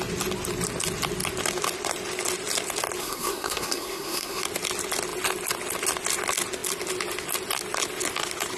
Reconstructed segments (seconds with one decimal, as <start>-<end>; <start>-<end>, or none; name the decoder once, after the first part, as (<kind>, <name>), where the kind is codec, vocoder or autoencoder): 3.0-4.4 (codec, SNAC)

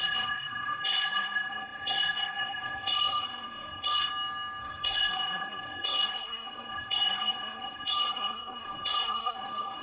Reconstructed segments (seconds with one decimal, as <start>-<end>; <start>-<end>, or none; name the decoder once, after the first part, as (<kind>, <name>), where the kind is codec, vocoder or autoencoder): 0.0-4.1 (codec, SNAC); 4.6-9.8

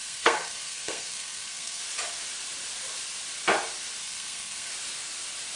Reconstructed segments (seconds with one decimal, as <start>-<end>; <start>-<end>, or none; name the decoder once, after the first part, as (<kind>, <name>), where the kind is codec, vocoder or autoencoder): 0.0-1.8 (codec, SNAC); 4.0-4.7

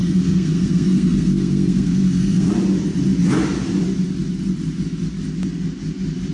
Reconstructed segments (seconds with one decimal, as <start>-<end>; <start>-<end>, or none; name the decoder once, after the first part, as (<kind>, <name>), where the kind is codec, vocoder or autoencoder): 0.0-2.5 (codec, SNAC)

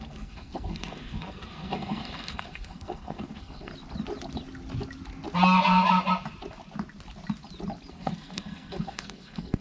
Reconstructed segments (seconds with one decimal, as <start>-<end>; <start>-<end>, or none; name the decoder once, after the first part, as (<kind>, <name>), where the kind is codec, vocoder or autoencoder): 0.0-3.7 (codec, SNAC); 7.9-9.6

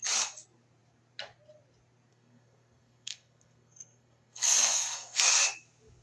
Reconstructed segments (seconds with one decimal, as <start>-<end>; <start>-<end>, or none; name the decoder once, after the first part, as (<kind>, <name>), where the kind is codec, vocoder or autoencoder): 2.1-5.4 (codec, SNAC)

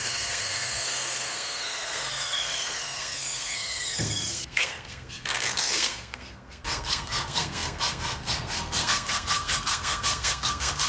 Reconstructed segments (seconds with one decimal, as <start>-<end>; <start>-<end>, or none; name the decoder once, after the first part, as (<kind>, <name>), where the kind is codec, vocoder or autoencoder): 0.0-10.9 (codec, SNAC)

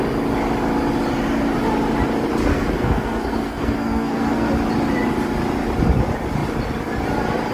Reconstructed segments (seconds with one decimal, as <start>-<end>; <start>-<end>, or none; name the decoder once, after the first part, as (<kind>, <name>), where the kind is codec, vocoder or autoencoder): 2.5-4.5 (codec, SNAC)